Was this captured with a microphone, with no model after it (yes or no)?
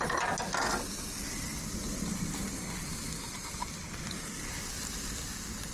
yes